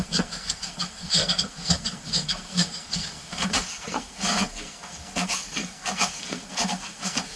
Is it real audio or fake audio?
fake